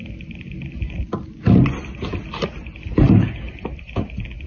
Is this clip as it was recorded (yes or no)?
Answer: yes